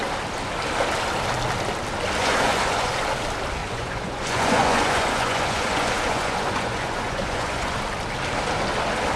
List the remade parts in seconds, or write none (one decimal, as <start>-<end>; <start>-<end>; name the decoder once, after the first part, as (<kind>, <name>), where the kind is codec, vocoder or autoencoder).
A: 2.2-2.9 (vocoder, Vocos); 3.6-7.8